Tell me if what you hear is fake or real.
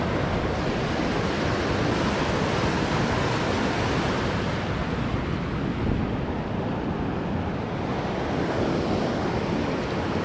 real